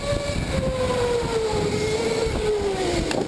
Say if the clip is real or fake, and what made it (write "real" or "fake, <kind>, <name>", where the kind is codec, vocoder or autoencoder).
real